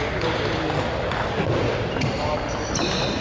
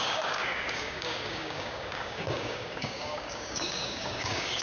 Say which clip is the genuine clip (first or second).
first